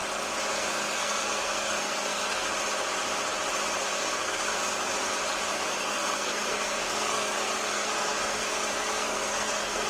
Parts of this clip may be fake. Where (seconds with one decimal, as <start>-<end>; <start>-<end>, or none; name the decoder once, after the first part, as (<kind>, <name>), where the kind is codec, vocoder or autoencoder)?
0.5-2.5 (codec, SNAC); 3.8-4.9; 5.5-9.9